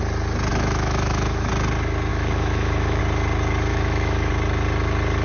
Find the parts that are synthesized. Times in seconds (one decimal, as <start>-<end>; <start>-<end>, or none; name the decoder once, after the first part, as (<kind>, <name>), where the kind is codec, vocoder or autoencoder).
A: 0.5-1.5 (autoencoder, DAC-VAE); 2.1-3.0; 3.7-4.3